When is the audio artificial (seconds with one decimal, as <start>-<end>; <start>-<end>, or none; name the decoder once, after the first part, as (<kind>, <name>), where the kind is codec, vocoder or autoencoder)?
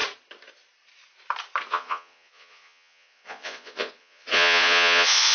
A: 1.7-5.3 (vocoder, Vocos)